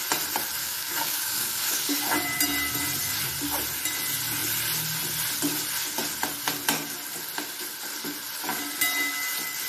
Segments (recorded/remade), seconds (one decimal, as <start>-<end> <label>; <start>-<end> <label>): 0.0-0.6 recorded; 0.6-2.0 remade; 2.0-9.7 recorded